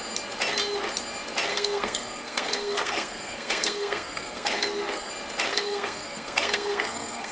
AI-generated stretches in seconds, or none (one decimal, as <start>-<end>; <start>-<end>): 1.5-5.1; 5.5-7.3